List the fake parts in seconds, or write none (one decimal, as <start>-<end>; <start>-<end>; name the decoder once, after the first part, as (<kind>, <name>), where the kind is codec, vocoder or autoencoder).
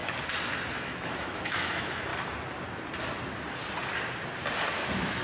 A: 0.7-2.1 (autoencoder, DAC-VAE); 4.7-5.2